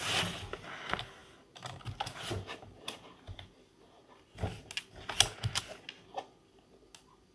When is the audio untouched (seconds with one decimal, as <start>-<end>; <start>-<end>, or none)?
0.0-7.3